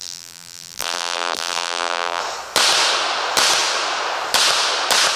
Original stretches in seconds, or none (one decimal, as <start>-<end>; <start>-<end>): 2.2-5.2